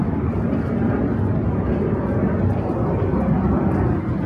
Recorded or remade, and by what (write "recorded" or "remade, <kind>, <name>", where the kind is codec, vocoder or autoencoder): recorded